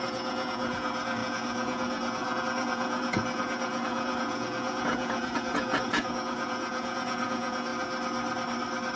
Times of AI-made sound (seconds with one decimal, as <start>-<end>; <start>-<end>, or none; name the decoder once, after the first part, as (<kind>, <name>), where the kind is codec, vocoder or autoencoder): 0.0-7.7 (vocoder, Vocos)